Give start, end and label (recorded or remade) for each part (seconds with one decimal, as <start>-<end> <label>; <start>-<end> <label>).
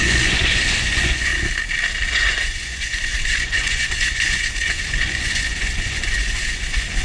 0.0-1.3 remade; 1.3-2.1 recorded; 2.1-7.0 remade